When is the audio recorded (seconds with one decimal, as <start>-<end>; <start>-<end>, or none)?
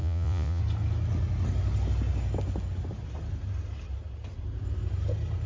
0.6-5.5